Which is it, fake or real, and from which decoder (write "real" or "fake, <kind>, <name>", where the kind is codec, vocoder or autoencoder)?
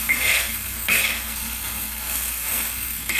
fake, codec, SNAC